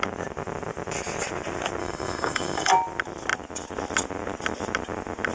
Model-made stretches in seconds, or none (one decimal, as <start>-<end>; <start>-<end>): 1.8-2.7